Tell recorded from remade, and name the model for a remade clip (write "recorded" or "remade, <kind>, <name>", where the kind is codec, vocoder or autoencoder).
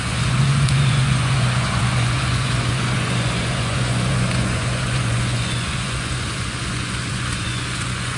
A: remade, vocoder, Vocos